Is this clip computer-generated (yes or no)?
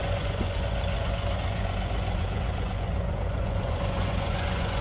yes